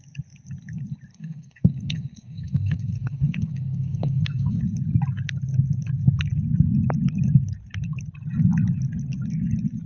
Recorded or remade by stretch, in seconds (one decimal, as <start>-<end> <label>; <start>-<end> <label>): 0.0-1.1 recorded; 1.1-4.6 remade; 4.6-9.9 recorded